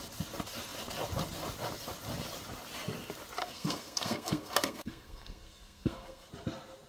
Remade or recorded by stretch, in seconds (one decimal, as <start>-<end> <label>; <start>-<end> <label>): 0.0-3.4 recorded; 3.4-6.3 remade; 6.3-6.9 recorded